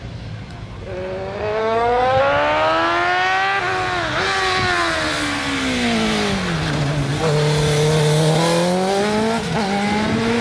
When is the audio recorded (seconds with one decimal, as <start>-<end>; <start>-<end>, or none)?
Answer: 0.0-1.6; 2.2-10.4